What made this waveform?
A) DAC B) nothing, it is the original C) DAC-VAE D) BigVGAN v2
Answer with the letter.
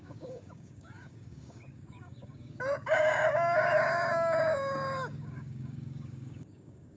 A